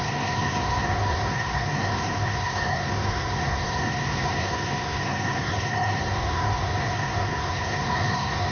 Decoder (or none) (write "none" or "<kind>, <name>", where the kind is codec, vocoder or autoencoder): codec, SNAC